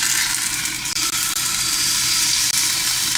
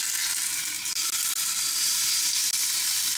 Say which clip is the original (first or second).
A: second